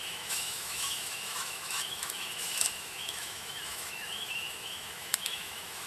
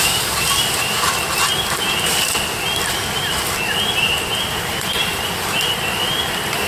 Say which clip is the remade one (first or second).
first